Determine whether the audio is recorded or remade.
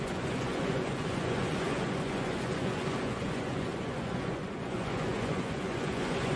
remade